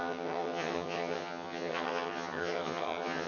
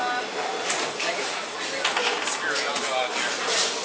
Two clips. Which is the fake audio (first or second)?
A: first